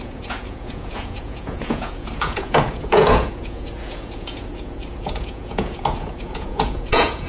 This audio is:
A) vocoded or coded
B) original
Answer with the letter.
A